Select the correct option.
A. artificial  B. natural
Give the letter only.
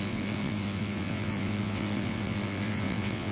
A